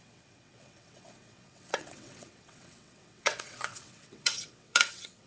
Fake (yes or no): yes